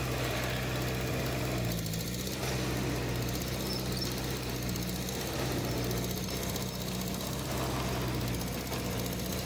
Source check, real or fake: real